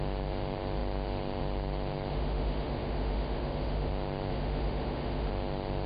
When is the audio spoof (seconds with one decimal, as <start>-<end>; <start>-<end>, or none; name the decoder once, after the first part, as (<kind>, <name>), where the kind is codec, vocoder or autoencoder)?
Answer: 2.1-3.9 (autoencoder, DAC-VAE); 4.3-5.3